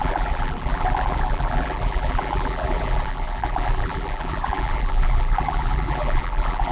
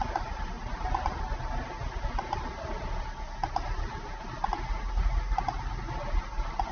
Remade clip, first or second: first